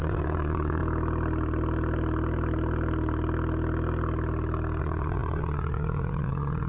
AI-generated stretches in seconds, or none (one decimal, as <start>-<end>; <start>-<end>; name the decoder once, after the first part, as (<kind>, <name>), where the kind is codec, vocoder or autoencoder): 0.0-0.8 (vocoder, Vocos); 4.8-6.7